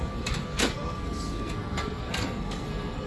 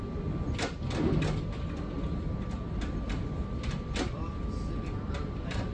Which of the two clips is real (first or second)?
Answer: second